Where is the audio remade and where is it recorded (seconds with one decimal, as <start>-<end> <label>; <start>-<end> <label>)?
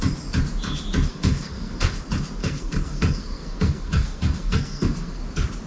0.0-1.1 recorded; 1.1-1.9 remade; 1.9-2.4 recorded; 2.4-5.2 remade; 5.2-5.7 recorded